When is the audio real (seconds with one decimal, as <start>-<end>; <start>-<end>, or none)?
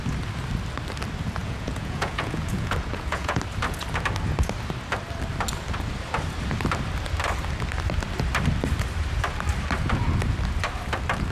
0.0-1.4; 3.4-11.3